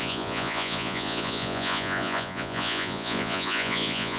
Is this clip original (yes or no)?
no